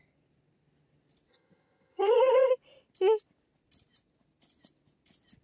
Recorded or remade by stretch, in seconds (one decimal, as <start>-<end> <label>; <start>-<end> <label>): 0.0-1.3 recorded; 1.3-2.5 remade; 2.5-5.4 recorded